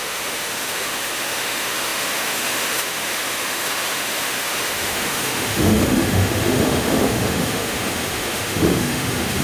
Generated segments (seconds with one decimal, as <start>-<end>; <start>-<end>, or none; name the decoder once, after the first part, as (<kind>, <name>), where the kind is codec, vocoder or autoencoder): 0.0-9.4 (autoencoder, DAC-VAE)